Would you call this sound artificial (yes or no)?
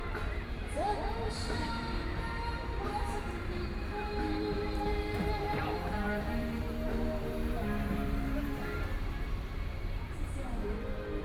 yes